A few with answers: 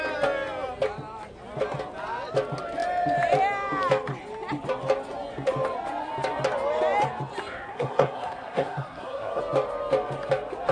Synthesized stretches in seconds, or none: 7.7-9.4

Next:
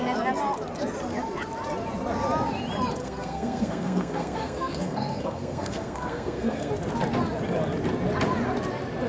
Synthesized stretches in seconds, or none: 3.0-6.7